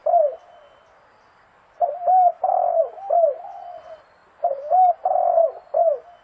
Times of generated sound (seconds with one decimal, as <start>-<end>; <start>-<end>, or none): none